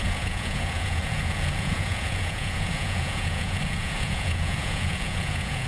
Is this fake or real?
fake